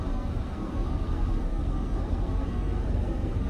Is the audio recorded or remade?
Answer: remade